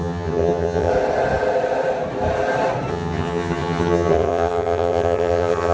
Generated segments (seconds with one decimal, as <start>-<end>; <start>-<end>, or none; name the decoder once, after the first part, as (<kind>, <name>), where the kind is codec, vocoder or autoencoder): 0.0-0.9 (vocoder, HiFi-GAN); 2.9-5.7